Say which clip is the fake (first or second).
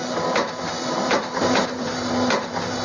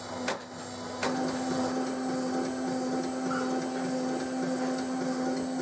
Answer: first